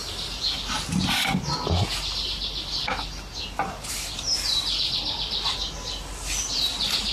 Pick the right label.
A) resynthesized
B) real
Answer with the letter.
B